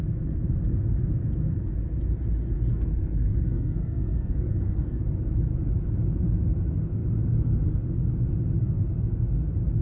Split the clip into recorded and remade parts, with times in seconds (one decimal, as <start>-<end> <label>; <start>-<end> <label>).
0.0-2.7 recorded; 2.7-5.0 remade; 5.0-9.8 recorded